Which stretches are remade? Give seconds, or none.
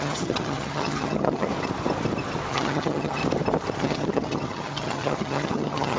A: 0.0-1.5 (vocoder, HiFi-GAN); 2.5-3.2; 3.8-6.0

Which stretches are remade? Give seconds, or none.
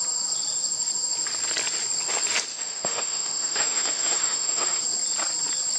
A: 2.5-4.8 (autoencoder, DAC-VAE)